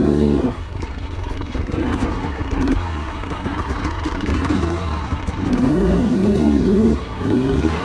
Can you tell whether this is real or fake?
fake